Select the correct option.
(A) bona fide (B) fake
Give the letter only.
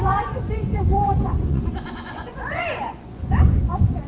B